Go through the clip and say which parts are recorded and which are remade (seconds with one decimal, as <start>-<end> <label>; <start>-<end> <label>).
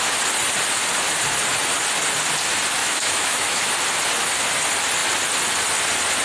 0.0-2.8 recorded; 2.8-3.7 remade; 3.7-6.2 recorded